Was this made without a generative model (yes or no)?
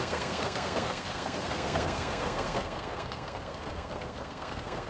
no